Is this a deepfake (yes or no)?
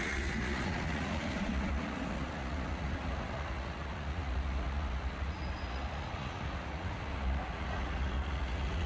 yes